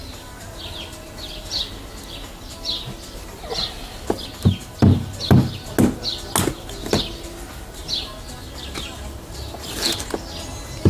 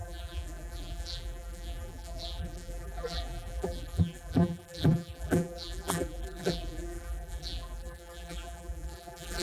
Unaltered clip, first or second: first